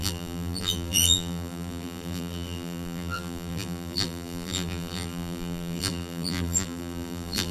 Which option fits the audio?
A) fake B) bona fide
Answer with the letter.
A